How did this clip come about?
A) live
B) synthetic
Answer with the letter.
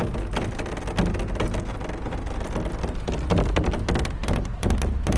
A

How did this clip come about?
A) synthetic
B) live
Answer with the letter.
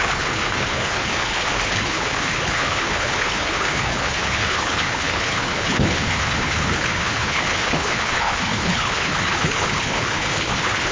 A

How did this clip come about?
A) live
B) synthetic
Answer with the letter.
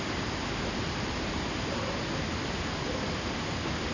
A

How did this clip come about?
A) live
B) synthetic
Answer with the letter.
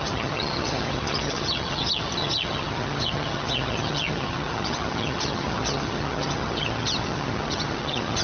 B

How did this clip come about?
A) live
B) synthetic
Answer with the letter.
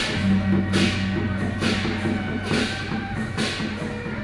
A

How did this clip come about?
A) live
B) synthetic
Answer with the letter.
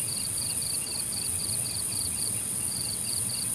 B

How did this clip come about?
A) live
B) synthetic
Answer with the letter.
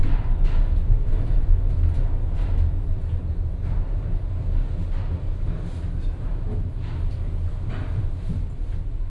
A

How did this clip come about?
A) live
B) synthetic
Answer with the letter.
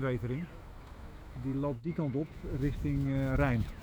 B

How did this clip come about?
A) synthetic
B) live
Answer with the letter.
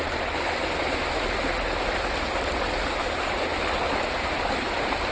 B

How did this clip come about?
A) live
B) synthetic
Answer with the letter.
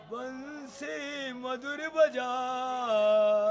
A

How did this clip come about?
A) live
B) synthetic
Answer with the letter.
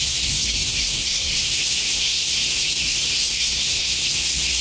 B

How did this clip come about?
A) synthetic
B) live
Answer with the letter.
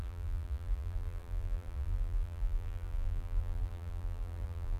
A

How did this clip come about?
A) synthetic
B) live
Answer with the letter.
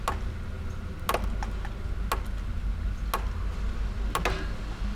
B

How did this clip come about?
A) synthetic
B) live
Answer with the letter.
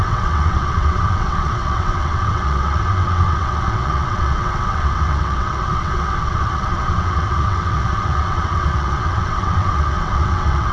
A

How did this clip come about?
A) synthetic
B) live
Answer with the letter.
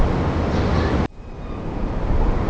B